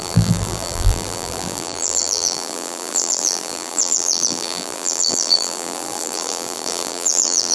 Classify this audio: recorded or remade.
remade